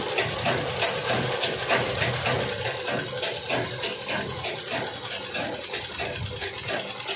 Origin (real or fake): real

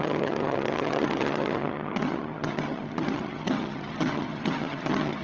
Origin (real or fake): fake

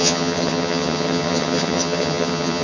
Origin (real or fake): fake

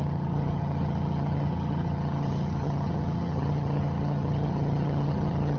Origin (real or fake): fake